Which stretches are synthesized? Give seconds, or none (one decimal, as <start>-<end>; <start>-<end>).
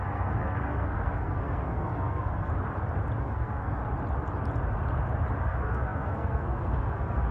0.0-2.5; 3.2-3.8; 5.4-7.3